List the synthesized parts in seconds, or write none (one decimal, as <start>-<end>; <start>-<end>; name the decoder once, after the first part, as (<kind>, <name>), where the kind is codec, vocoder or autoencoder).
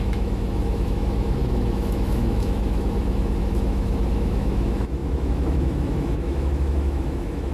0.0-7.5 (autoencoder, DAC-VAE)